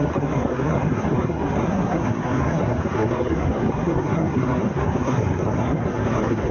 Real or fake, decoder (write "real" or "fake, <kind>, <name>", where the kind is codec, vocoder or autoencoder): fake, codec, SNAC